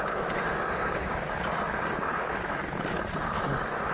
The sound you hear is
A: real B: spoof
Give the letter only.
A